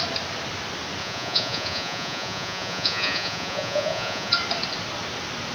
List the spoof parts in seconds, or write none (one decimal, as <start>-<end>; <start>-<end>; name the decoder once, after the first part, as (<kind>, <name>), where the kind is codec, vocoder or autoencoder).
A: 1.0-4.3 (vocoder, Vocos)